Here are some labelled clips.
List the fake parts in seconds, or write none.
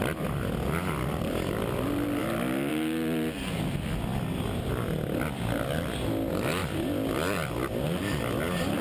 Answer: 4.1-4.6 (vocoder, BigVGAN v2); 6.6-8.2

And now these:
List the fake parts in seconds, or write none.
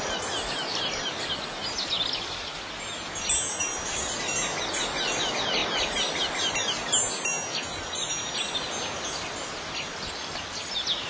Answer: none